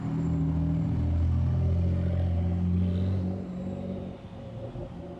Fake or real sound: real